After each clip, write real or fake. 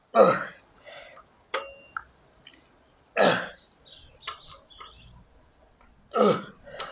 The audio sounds real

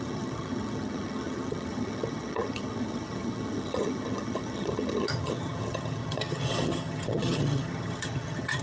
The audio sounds fake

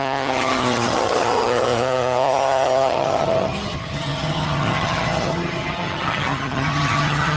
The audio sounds fake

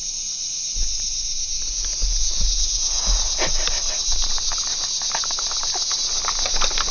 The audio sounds real